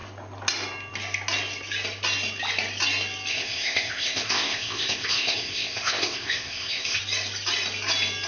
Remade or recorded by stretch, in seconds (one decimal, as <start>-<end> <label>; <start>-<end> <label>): 0.0-3.3 recorded; 3.3-7.0 remade; 7.0-8.3 recorded